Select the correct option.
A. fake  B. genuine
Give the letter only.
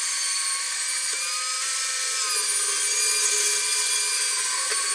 B